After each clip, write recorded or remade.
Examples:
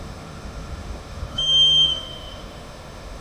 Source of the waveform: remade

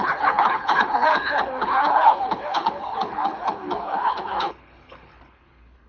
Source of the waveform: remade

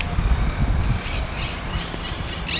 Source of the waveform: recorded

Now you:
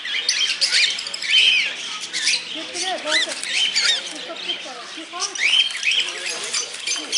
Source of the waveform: remade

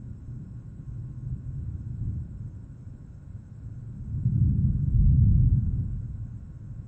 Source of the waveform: remade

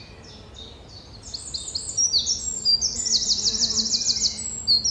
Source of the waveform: recorded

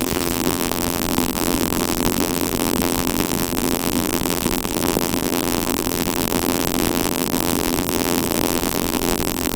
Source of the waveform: remade